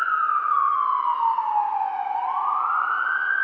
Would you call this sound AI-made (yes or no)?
no